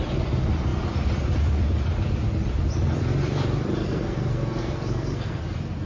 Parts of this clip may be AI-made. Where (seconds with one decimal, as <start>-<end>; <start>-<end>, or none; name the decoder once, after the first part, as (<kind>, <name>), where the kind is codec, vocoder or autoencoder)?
3.8-5.4 (codec, SNAC)